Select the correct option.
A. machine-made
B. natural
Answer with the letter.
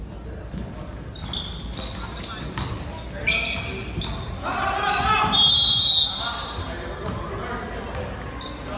B